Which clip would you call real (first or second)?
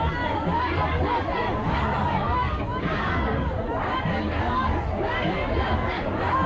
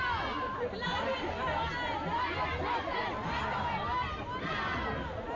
second